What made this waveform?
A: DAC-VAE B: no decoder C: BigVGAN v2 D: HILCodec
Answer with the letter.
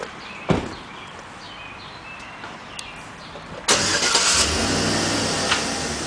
B